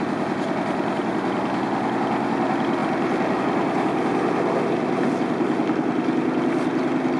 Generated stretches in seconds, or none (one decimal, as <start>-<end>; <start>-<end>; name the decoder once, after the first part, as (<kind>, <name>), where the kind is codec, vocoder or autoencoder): none